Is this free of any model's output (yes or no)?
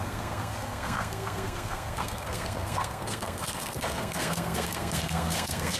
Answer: no